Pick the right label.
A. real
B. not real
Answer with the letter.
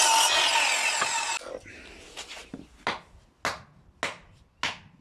A